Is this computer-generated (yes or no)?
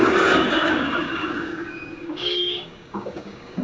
yes